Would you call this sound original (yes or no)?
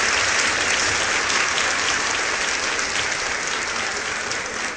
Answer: yes